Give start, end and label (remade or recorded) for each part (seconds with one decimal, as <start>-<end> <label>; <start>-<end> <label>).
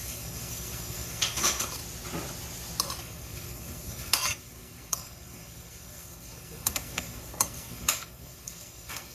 0.0-1.8 remade; 1.8-3.0 recorded; 3.0-9.1 remade